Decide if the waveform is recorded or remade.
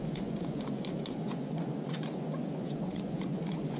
remade